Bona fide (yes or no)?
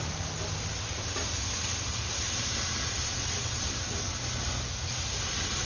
yes